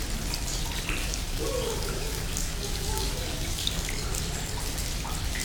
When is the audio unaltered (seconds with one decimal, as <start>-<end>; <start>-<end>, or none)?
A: 0.0-1.0; 4.2-5.4